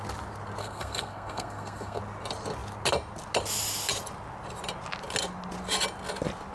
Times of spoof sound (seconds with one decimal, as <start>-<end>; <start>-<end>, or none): 0.6-2.0